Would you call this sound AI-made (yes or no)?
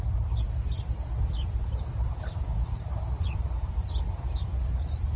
no